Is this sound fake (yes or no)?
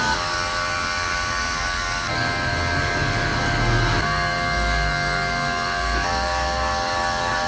yes